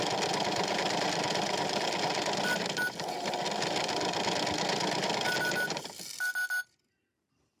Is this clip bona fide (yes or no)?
yes